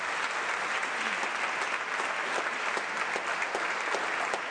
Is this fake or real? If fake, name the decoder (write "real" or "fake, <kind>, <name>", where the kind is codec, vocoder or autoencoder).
real